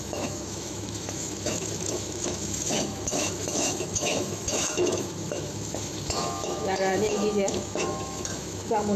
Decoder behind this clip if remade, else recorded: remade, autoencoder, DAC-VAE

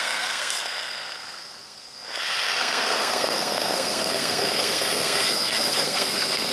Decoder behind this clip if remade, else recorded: remade, codec, SNAC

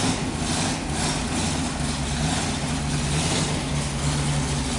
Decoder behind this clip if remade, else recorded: recorded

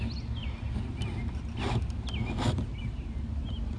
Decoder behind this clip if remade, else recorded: recorded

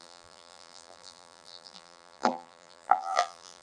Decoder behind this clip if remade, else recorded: remade, vocoder, BigVGAN v2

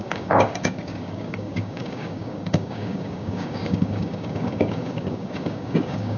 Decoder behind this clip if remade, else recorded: remade, codec, DAC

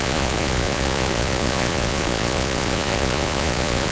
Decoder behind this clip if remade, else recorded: remade, vocoder, Vocos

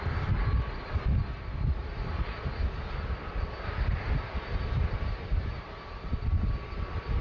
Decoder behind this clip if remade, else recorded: recorded